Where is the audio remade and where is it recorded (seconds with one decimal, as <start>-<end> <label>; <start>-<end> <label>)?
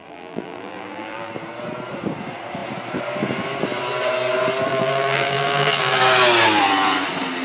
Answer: 0.0-1.3 remade; 1.3-4.7 recorded; 4.7-6.0 remade; 6.0-7.4 recorded